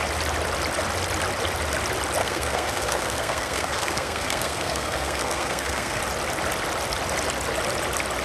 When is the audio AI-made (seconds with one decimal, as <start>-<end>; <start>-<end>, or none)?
2.2-6.0